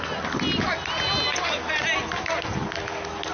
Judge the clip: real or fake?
real